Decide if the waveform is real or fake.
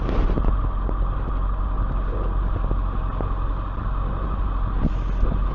real